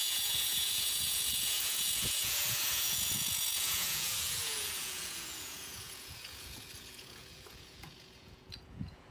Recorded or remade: remade